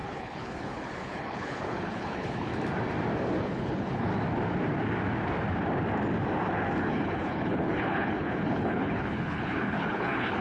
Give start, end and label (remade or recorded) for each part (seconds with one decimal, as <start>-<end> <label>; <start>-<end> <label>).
0.0-2.5 remade; 2.5-3.4 recorded; 3.4-4.1 remade; 4.1-6.9 recorded; 6.9-10.4 remade